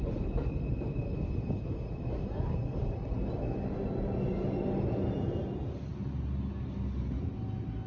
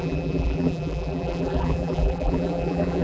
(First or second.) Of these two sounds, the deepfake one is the second